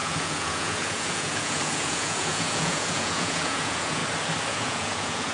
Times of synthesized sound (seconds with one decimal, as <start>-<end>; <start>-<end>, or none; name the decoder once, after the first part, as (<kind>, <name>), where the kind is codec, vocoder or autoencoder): 0.0-4.0 (vocoder, Vocos); 4.5-5.3